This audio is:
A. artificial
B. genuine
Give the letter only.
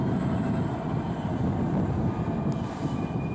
B